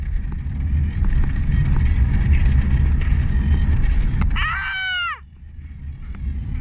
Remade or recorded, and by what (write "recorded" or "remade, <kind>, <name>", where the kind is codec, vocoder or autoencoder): recorded